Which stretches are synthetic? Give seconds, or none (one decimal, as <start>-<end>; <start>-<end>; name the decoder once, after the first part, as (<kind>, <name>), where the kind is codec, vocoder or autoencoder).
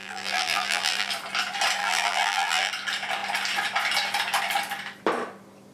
0.0-1.1 (vocoder, BigVGAN v2); 1.8-2.7